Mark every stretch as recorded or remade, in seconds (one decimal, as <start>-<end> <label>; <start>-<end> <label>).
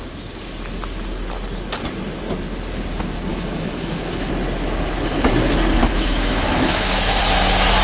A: 0.0-3.3 recorded; 3.3-4.3 remade; 4.3-5.8 recorded; 5.8-7.2 remade; 7.2-7.8 recorded